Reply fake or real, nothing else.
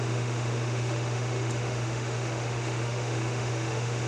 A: fake